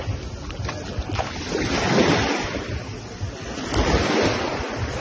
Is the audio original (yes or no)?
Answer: yes